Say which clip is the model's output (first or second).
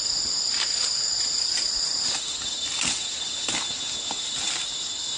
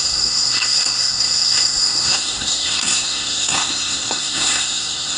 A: second